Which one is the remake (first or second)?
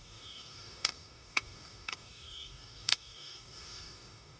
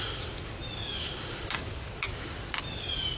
first